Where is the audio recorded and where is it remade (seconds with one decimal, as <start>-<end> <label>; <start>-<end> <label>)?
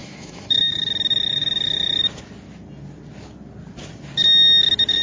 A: 0.0-0.9 remade; 0.9-5.0 recorded